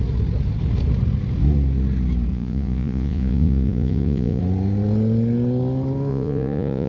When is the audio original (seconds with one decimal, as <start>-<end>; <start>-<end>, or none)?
0.0-2.3; 4.4-6.1